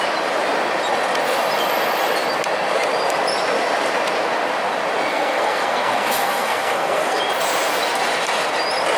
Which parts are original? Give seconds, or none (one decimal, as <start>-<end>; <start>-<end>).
0.0-5.1; 7.2-9.0